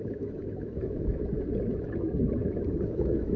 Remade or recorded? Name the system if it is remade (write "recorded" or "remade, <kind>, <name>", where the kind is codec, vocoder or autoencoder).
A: remade, autoencoder, DAC-VAE